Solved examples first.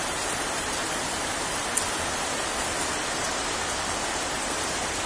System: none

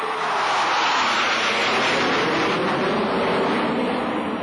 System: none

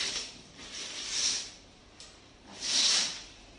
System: vocoder, BigVGAN v2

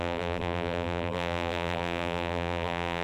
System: vocoder, BigVGAN v2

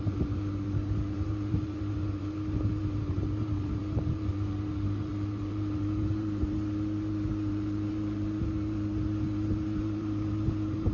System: vocoder, BigVGAN v2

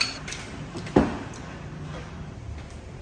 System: vocoder, BigVGAN v2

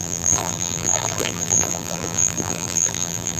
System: vocoder, BigVGAN v2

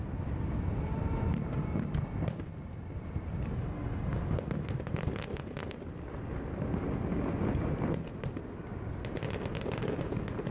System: none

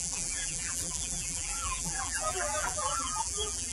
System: vocoder, BigVGAN v2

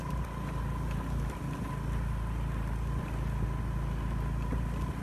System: none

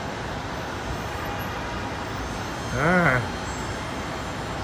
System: none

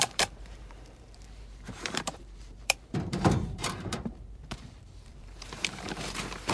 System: vocoder, BigVGAN v2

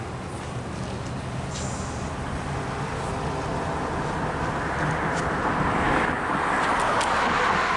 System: none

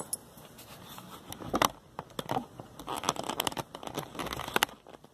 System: none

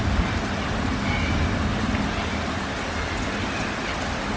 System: none